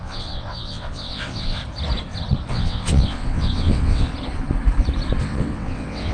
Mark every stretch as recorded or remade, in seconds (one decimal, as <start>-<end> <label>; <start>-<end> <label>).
0.0-1.6 remade; 1.6-2.5 recorded; 2.5-4.1 remade; 4.1-5.2 recorded; 5.2-6.1 remade